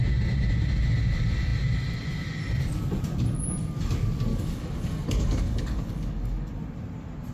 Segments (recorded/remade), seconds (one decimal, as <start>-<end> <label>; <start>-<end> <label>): 0.0-4.3 recorded; 4.3-6.5 remade; 6.5-7.3 recorded